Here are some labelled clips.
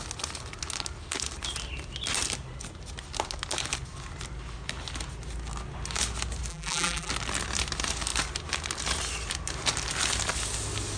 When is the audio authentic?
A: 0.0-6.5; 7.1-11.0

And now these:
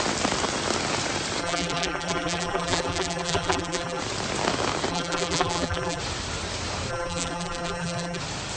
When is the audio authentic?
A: 0.0-1.4; 4.0-4.9; 6.0-6.9; 8.2-8.6

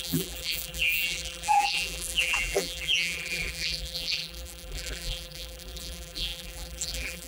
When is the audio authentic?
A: none

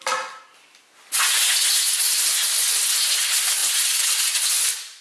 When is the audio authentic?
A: 0.0-5.0

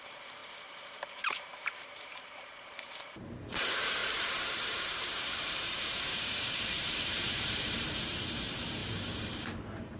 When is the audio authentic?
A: 0.4-1.2

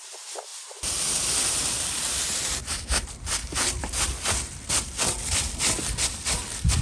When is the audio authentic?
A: 0.0-2.6

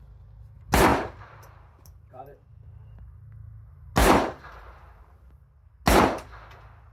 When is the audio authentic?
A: 0.0-0.9; 2.5-4.0; 5.3-6.9

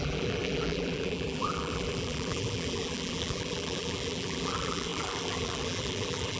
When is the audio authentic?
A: none